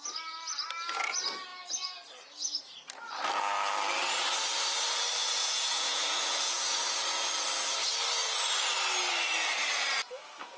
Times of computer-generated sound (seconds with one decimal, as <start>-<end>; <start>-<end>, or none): 5.2-6.8